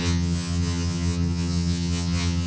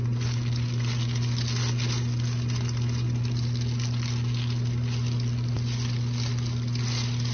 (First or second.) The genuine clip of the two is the second